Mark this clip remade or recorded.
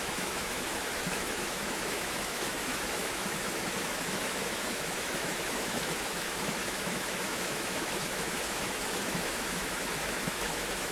remade